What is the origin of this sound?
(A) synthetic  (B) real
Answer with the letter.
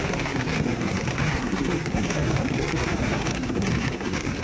A